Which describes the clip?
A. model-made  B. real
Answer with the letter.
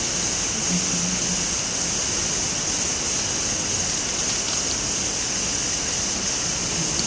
B